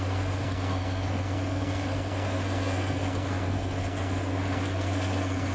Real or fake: fake